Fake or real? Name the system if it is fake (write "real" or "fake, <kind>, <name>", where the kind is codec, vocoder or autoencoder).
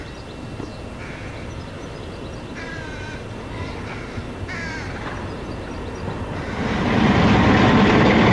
real